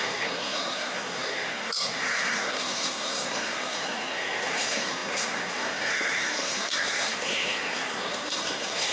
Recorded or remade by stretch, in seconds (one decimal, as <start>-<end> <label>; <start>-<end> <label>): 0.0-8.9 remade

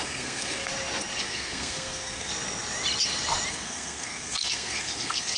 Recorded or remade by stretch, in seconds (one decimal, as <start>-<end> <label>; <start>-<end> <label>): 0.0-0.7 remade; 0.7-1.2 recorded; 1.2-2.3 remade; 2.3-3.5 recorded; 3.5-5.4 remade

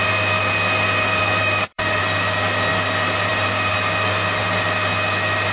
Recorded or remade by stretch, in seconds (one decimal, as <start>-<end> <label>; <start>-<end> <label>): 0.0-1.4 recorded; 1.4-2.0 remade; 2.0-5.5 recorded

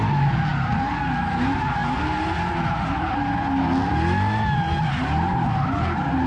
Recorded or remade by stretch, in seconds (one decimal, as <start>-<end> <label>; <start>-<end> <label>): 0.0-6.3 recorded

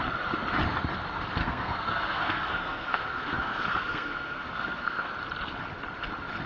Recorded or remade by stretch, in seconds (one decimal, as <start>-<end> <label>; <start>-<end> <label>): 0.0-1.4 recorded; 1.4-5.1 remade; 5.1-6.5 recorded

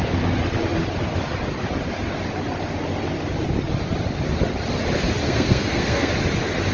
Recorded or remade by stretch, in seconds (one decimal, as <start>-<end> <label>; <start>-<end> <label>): 0.0-5.2 recorded; 5.2-6.1 remade; 6.1-6.7 recorded

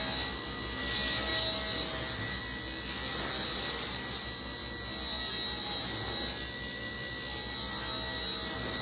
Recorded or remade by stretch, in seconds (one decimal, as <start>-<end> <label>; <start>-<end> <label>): 0.0-8.8 recorded

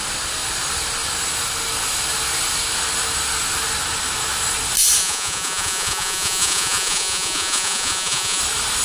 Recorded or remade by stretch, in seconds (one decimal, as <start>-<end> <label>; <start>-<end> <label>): 0.0-5.0 recorded; 5.0-8.4 remade; 8.4-8.8 recorded